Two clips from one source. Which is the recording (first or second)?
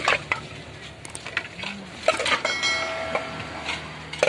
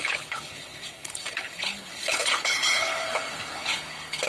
first